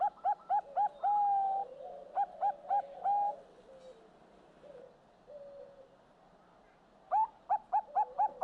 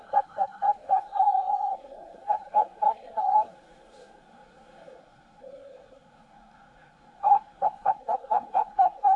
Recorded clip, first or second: first